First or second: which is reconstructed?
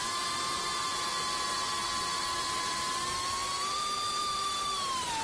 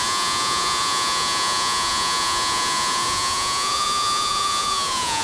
second